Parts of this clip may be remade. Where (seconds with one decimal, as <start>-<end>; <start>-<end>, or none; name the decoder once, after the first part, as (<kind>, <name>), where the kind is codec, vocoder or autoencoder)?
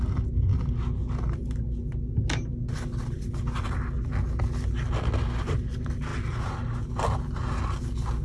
none